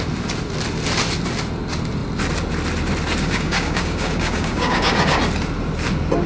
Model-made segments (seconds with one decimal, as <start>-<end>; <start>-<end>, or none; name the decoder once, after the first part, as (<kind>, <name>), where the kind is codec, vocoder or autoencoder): 3.2-5.2 (codec, DAC)